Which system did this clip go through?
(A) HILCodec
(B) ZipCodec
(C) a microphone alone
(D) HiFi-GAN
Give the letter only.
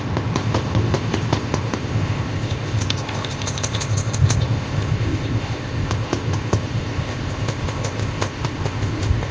B